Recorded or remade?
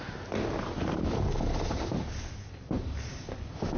recorded